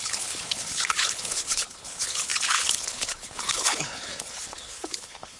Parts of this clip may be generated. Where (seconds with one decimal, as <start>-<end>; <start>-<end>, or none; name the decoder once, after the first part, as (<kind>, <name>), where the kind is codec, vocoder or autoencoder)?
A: 0.0-5.4 (codec, HILCodec)